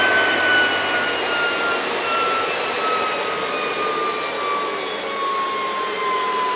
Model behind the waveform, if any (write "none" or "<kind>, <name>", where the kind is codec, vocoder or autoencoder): none